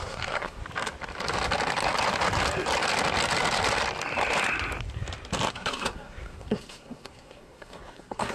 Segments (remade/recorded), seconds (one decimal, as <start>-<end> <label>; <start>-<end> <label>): 0.0-0.6 remade; 0.6-5.5 recorded; 5.5-8.3 remade